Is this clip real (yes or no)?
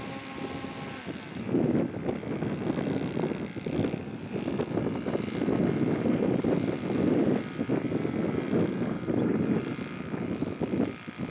yes